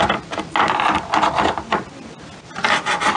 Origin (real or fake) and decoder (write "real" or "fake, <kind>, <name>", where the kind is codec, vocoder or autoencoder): real